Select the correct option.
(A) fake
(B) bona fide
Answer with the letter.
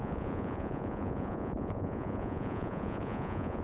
A